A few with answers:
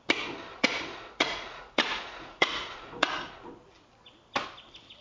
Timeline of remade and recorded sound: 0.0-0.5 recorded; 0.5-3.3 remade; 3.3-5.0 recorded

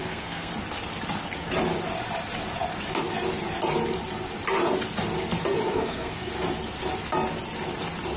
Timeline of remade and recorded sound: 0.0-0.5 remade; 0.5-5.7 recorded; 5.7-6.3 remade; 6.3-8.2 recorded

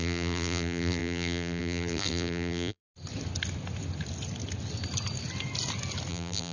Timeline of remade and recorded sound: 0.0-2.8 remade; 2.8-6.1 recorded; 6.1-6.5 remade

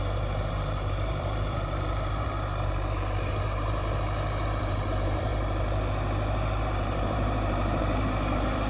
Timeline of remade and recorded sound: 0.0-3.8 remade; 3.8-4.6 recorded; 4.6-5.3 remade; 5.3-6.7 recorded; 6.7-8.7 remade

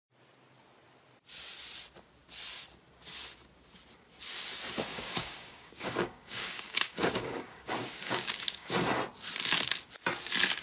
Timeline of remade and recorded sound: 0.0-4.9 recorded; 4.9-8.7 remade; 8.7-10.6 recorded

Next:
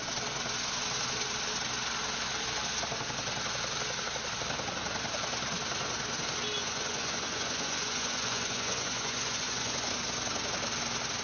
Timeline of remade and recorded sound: 0.0-6.6 recorded; 6.6-9.9 remade; 9.9-11.2 recorded